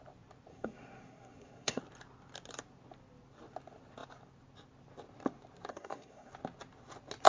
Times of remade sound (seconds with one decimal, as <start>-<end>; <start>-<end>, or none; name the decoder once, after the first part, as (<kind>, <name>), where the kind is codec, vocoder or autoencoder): 0.5-1.8 (codec, SNAC); 5.7-6.3